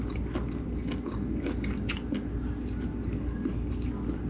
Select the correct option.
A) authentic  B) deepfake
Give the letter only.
A